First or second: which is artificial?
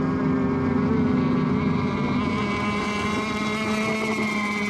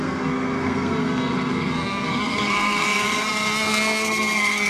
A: second